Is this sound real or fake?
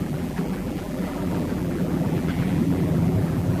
fake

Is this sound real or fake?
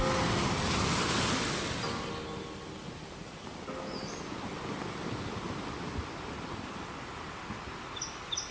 real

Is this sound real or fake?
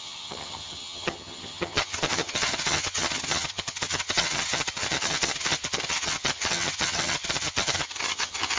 fake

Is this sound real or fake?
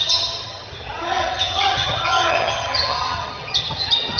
fake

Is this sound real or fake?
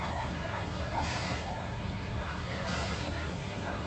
fake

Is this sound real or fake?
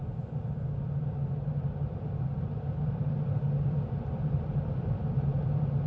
fake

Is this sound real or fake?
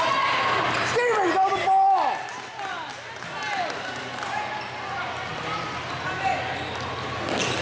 real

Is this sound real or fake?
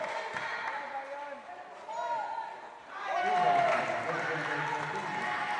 real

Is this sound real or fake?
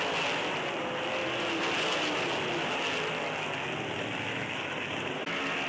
real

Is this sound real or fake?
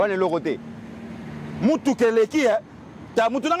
real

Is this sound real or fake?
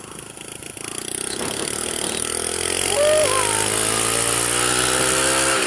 real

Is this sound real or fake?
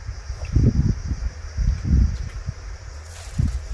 real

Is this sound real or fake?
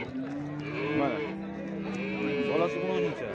real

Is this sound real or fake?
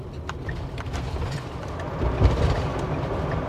real